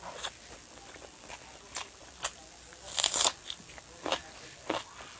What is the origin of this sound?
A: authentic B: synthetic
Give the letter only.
A